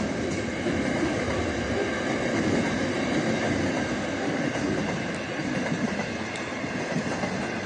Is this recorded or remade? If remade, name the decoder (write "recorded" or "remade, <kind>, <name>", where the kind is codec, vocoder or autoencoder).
recorded